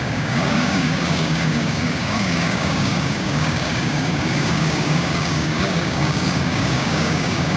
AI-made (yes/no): yes